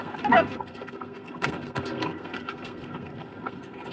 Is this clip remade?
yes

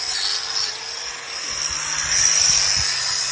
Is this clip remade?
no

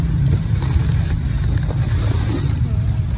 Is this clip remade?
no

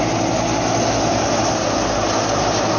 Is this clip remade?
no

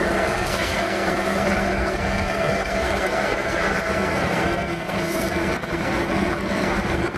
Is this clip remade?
yes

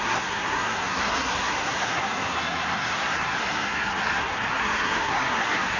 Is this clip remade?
yes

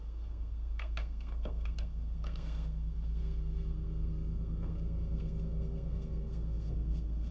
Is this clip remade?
yes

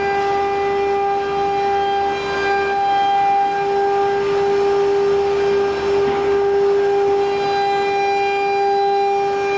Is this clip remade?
no